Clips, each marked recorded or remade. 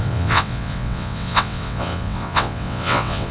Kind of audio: remade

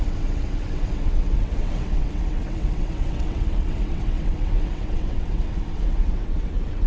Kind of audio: remade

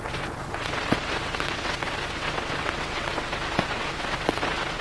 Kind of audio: remade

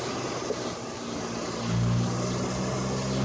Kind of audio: recorded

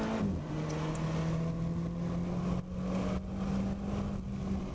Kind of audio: recorded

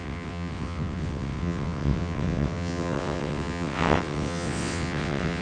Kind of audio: remade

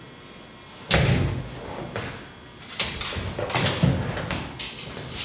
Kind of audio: recorded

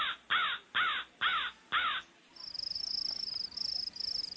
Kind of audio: recorded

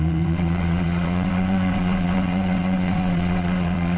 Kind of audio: remade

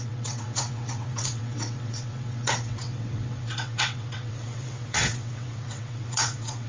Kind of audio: remade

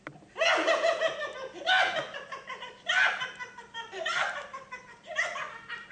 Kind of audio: recorded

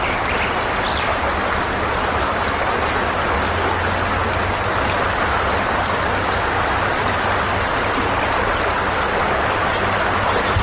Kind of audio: recorded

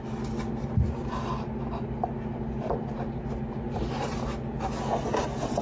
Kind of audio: recorded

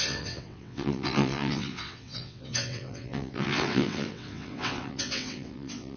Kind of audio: remade